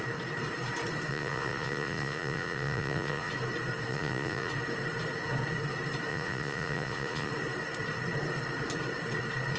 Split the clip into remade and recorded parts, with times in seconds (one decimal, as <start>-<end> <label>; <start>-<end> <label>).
0.0-1.1 recorded; 1.1-3.3 remade; 3.3-3.9 recorded; 3.9-4.5 remade; 4.5-6.1 recorded; 6.1-7.3 remade; 7.3-9.6 recorded